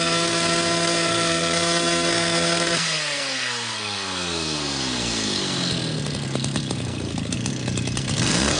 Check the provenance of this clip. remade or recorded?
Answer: remade